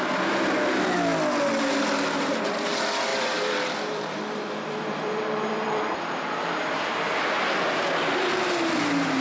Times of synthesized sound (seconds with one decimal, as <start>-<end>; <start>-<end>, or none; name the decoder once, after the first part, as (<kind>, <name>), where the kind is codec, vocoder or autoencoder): 3.1-7.2 (vocoder, BigVGAN v2)